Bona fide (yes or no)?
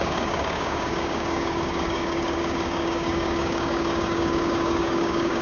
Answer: no